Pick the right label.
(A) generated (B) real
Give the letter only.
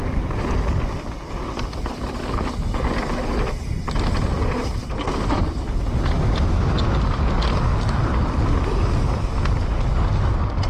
B